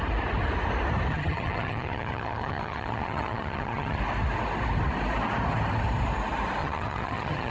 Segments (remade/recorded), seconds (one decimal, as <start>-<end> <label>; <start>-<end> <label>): 0.0-1.1 recorded; 1.1-4.0 remade; 4.0-6.6 recorded; 6.6-7.5 remade